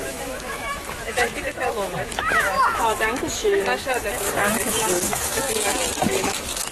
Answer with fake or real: fake